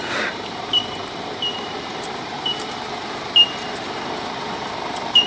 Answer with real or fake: fake